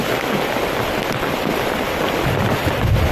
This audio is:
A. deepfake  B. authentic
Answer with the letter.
B